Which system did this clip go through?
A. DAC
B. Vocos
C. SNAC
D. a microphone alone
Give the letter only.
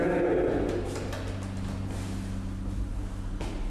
D